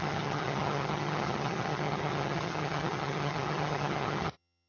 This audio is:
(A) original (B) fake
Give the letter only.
B